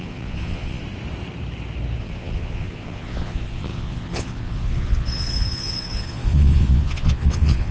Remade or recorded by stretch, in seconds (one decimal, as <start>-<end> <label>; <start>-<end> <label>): 0.0-0.8 remade; 0.8-2.0 recorded; 2.0-7.7 remade